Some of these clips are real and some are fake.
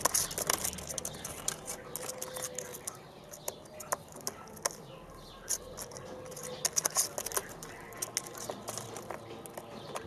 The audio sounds real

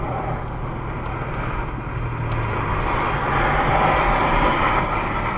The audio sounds real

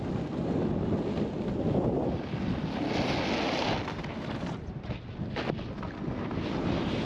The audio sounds real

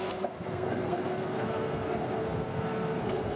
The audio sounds fake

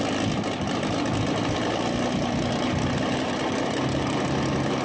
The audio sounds real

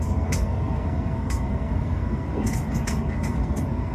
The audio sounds fake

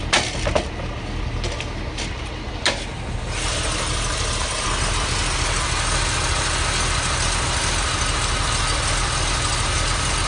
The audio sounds real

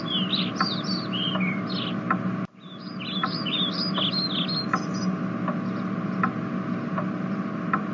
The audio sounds real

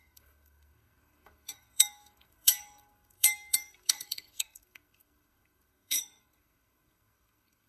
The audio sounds fake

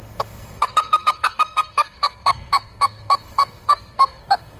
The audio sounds fake